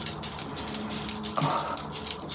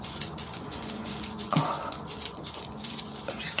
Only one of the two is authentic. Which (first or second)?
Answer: first